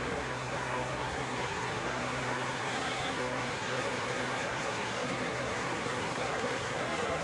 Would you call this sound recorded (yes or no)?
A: no